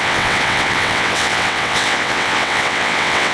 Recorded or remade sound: remade